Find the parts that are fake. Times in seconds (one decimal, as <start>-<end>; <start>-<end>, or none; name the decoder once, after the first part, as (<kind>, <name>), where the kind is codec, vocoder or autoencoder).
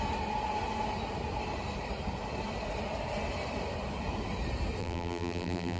4.8-5.8 (vocoder, BigVGAN v2)